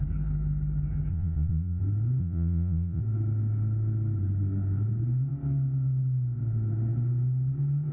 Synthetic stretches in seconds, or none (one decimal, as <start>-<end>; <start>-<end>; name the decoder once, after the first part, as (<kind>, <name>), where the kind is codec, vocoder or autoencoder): 1.1-1.8 (vocoder, Vocos); 2.2-3.0